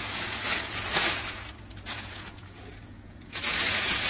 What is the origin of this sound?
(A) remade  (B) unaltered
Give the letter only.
A